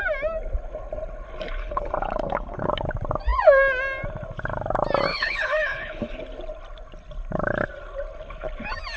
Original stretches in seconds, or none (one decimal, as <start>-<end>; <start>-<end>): 0.0-1.6; 2.7-5.1; 6.1-9.0